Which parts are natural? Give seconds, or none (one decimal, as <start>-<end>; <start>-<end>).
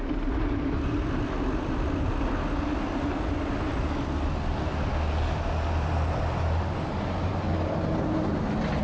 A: 0.0-8.8